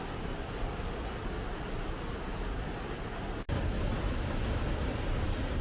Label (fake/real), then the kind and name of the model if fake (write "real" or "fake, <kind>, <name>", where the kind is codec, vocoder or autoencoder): real